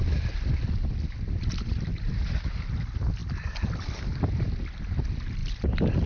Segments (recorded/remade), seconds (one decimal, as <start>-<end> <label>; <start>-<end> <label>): 0.0-6.1 recorded